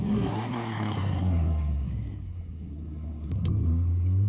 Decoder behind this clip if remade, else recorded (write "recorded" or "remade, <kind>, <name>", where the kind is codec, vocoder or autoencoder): remade, codec, SNAC